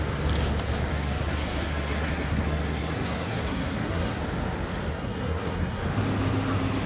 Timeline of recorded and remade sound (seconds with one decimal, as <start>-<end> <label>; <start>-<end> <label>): 0.0-0.9 recorded; 0.9-4.2 remade; 4.2-4.9 recorded; 4.9-5.8 remade; 5.8-6.9 recorded

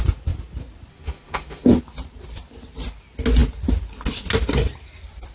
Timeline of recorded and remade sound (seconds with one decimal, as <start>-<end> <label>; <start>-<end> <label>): 0.0-0.9 recorded; 0.9-1.8 remade; 1.8-5.3 recorded

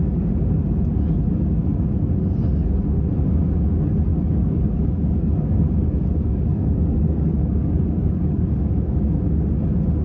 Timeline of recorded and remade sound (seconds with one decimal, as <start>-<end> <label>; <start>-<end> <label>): 0.0-4.1 recorded; 4.1-9.0 remade; 9.0-10.0 recorded

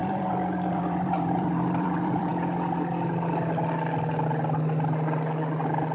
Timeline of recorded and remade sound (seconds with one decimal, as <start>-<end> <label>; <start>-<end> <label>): 0.0-2.3 remade; 2.3-5.9 recorded